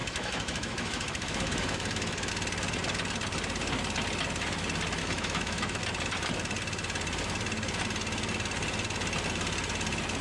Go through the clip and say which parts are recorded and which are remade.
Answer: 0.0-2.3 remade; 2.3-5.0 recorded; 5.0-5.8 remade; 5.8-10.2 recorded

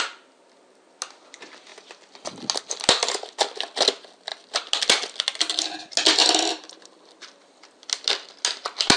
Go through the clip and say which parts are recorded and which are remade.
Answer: 0.0-6.2 recorded; 6.2-7.1 remade; 7.1-9.0 recorded